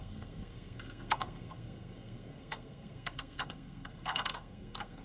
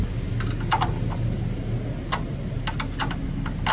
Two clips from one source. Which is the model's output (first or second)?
first